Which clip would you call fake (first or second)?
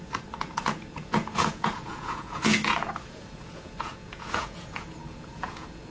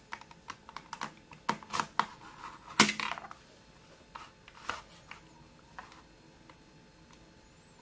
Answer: first